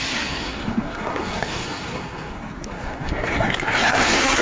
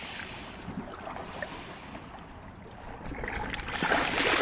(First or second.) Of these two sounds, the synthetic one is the first